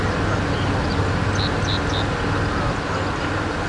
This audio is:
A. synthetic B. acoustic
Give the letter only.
B